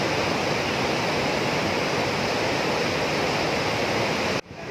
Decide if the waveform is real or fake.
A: real